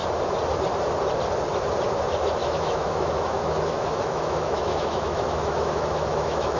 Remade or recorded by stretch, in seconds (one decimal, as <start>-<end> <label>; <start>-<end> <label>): 0.0-2.4 recorded; 2.4-6.6 remade